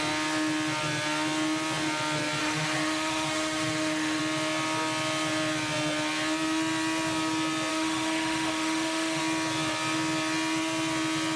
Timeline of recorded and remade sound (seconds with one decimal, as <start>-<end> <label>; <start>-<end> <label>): 0.0-2.4 recorded; 2.4-4.2 remade; 4.2-7.7 recorded; 7.7-9.2 remade; 9.2-11.4 recorded